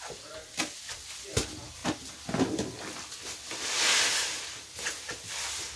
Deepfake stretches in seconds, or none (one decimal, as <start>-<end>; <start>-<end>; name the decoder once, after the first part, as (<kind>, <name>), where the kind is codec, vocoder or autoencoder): none